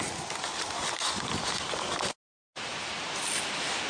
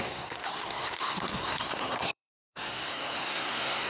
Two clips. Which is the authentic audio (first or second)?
first